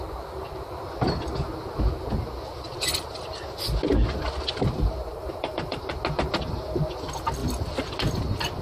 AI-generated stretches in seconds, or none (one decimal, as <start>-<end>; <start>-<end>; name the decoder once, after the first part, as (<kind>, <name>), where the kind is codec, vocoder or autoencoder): 5.1-5.9 (vocoder, BigVGAN v2)